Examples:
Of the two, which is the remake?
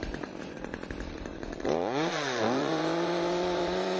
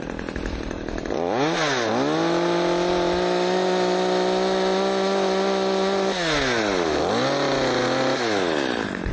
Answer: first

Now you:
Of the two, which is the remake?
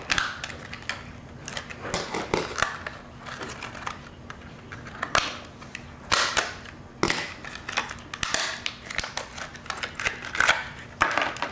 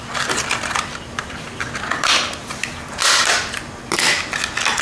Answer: second